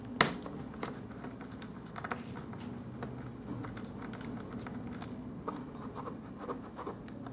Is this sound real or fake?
real